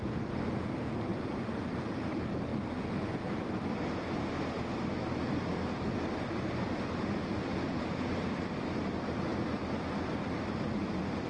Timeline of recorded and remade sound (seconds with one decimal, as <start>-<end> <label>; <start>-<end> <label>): 0.0-1.1 recorded; 1.1-1.7 remade; 1.7-11.3 recorded